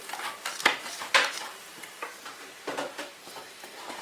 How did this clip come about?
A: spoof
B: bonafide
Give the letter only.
A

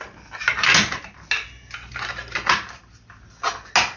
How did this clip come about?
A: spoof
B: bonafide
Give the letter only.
B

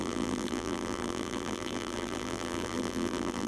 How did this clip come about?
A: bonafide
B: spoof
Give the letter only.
B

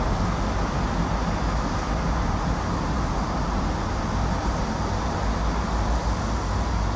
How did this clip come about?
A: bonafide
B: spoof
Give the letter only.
A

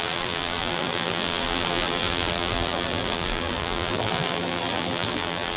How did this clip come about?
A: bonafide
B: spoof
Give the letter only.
B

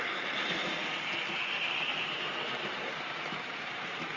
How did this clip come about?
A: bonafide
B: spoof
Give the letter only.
B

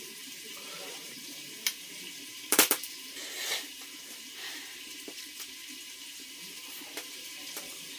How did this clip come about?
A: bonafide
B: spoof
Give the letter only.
B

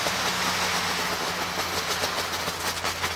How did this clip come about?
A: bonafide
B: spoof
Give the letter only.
A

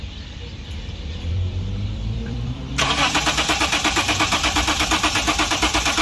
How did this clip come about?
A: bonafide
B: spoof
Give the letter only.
B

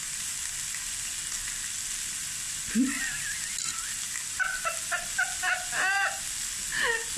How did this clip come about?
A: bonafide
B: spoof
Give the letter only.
A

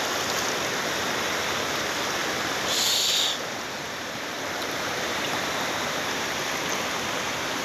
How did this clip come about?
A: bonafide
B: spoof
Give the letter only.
A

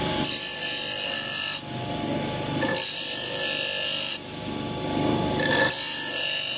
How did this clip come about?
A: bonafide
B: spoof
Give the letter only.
A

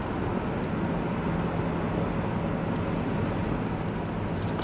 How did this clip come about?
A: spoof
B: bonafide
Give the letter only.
B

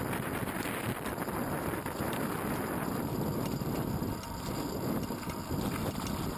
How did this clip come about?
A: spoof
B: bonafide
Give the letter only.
B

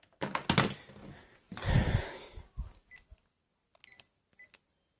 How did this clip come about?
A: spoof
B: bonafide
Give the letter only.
B